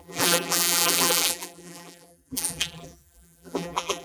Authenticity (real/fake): fake